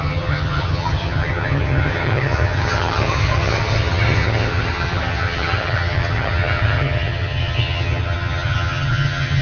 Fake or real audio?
fake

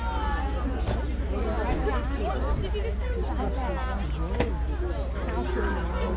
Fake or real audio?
real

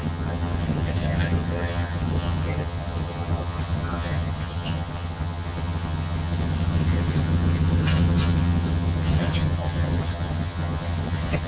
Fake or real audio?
fake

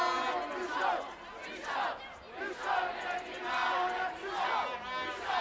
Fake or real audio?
real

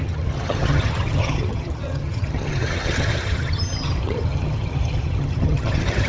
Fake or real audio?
fake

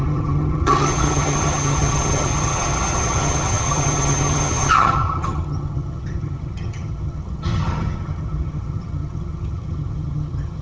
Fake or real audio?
fake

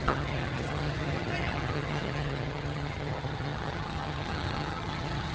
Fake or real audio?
fake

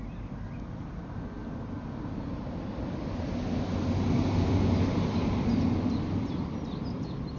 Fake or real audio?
real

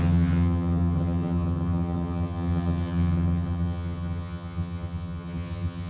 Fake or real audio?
fake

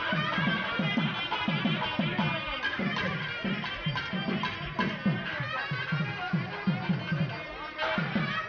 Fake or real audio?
real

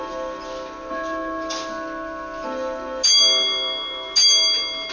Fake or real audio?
real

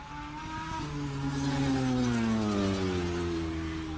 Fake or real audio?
real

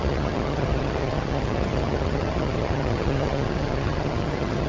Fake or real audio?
fake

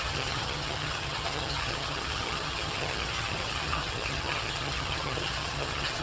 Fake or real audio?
fake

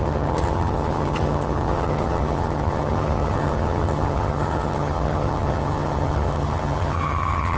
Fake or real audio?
fake